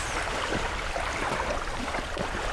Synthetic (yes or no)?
no